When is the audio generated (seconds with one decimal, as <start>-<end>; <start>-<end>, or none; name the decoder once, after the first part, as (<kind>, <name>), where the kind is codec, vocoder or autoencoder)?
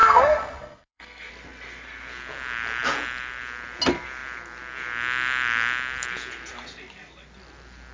0.0-1.3 (codec, SNAC)